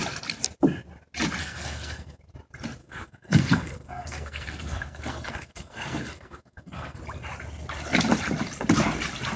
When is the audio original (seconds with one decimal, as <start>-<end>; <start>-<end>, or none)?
0.0-1.4; 2.2-2.8; 7.0-9.4

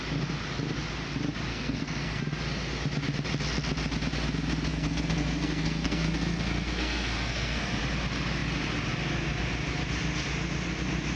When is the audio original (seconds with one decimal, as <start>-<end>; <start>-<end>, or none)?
0.0-1.5; 2.2-4.7; 7.8-11.2

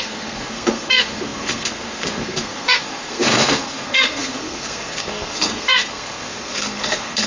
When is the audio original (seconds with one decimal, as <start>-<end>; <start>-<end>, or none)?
none

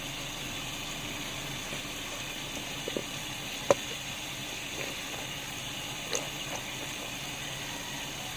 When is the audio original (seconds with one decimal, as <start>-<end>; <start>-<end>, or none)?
0.0-8.4

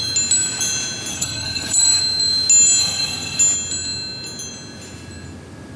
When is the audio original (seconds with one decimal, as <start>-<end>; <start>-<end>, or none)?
0.0-1.1; 2.0-2.8; 3.4-5.8